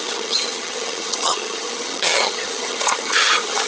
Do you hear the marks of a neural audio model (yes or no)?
yes